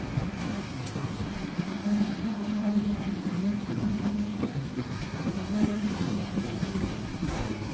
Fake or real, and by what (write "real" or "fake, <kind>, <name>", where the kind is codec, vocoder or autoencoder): fake, codec, SNAC